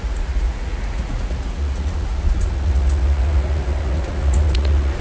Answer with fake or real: fake